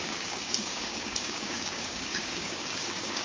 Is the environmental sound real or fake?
fake